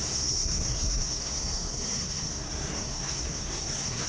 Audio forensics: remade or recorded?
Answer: remade